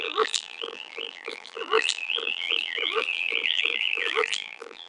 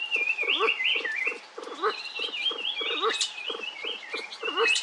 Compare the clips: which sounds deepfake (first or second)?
first